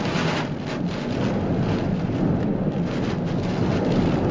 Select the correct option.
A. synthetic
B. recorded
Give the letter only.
B